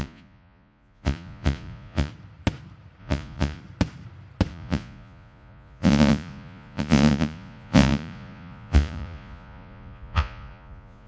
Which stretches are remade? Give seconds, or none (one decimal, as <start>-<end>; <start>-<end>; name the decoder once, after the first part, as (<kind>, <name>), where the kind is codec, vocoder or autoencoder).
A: 0.0-2.1 (vocoder, Vocos); 3.0-3.6; 4.5-11.1